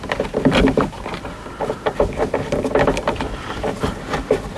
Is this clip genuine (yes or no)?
yes